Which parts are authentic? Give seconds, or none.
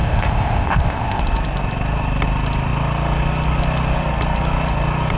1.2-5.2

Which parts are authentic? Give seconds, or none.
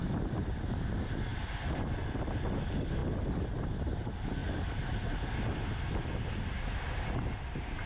0.0-7.9